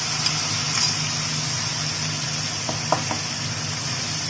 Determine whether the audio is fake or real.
real